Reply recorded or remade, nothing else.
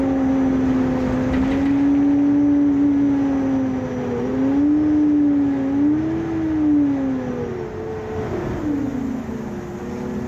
recorded